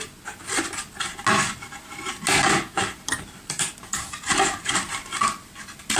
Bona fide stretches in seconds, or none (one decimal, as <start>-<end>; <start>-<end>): 0.0-6.0